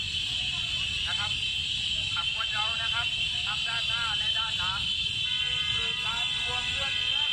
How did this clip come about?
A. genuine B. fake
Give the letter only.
B